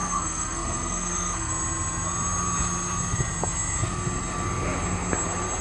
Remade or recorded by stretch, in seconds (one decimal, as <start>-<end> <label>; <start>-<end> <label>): 0.0-1.5 remade; 1.5-5.6 recorded